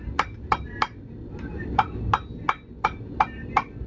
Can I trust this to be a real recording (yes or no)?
yes